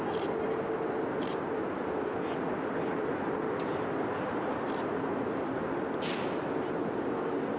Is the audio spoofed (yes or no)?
no